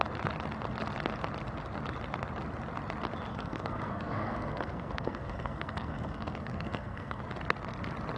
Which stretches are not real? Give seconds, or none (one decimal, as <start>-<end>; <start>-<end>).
3.3-7.2